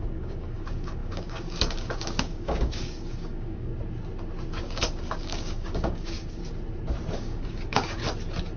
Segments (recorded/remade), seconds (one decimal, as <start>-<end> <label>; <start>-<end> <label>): 0.0-3.7 remade; 3.7-4.5 recorded; 4.5-6.4 remade; 6.4-7.2 recorded; 7.2-8.0 remade; 8.0-8.6 recorded